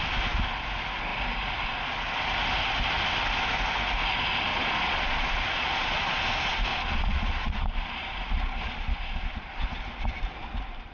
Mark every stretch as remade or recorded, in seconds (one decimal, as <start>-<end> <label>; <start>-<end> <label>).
0.0-4.5 recorded; 4.5-6.3 remade; 6.3-6.7 recorded; 6.7-9.8 remade; 9.8-10.9 recorded